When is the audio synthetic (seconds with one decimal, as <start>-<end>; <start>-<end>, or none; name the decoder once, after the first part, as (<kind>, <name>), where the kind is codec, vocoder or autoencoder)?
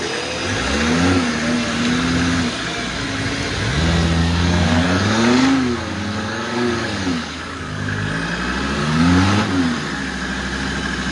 4.2-8.1 (codec, DAC); 8.8-9.4